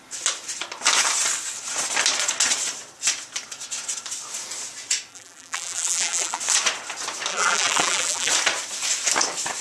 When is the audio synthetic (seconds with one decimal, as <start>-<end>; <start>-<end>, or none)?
5.1-6.4; 7.3-8.3

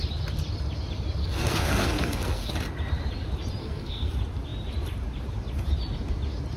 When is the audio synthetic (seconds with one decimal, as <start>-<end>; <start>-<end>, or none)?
1.2-2.5; 3.6-4.1